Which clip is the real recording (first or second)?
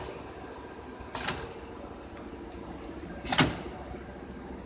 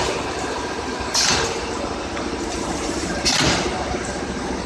first